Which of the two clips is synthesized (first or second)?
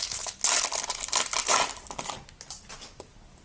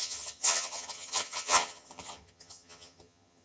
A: second